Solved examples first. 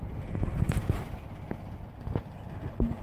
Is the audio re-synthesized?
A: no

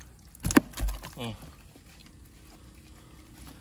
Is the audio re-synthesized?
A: no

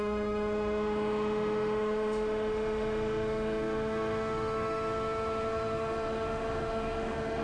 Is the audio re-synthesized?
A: yes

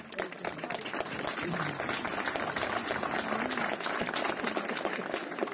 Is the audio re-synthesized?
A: no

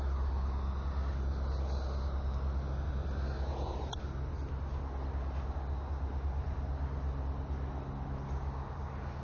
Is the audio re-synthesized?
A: no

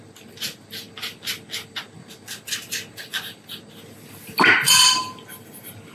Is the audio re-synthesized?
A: no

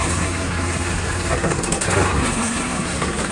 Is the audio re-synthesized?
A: yes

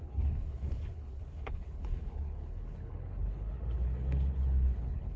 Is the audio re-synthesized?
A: yes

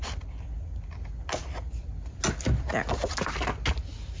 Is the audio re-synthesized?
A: no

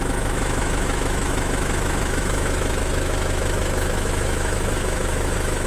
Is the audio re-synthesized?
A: yes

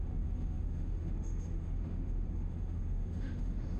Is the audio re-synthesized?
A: yes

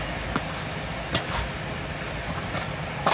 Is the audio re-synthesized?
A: no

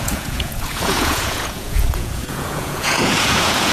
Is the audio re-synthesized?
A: yes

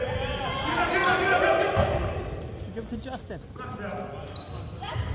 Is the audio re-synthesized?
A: no